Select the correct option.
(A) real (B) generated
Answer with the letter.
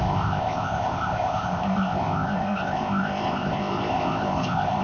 B